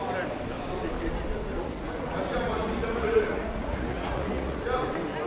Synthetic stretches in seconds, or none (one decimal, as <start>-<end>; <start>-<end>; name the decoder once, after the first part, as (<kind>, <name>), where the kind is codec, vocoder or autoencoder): 1.6-4.6 (vocoder, Vocos)